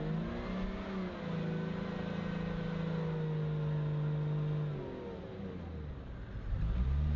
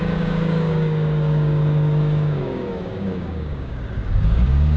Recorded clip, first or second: first